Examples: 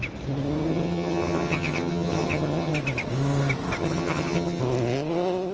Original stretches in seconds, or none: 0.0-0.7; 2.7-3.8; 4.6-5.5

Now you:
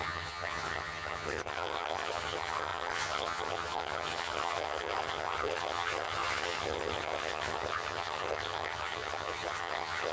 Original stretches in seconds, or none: none

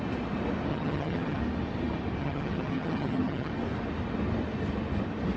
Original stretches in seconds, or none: 0.0-0.7; 1.4-2.2; 3.5-5.4

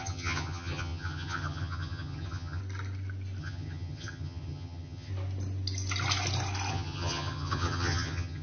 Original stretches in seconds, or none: 2.6-3.4; 5.1-6.7